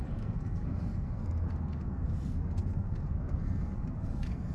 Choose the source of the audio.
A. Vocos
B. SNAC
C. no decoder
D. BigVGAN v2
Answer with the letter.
B